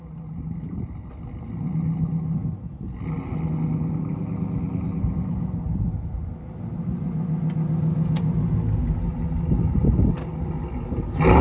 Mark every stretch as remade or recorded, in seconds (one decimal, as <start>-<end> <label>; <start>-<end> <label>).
0.0-11.4 recorded